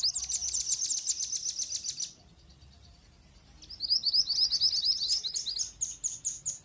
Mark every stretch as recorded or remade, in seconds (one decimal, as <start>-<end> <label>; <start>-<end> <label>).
0.0-6.6 recorded